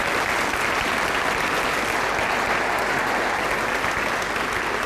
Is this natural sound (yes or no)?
yes